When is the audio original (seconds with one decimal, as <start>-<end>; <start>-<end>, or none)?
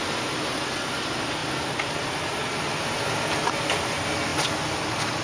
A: 0.0-5.2